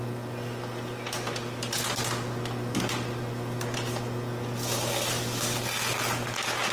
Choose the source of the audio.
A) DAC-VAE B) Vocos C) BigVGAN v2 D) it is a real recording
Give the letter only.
D